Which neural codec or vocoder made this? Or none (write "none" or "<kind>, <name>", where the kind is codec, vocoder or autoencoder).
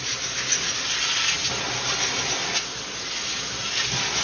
none